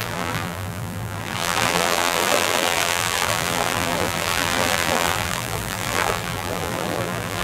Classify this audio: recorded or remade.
remade